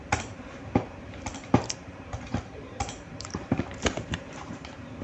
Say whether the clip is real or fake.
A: fake